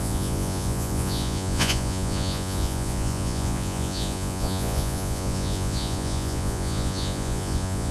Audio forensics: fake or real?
fake